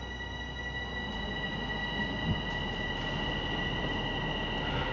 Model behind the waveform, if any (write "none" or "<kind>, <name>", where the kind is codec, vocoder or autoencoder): none